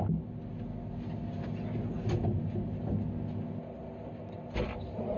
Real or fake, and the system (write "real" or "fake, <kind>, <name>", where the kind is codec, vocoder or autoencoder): real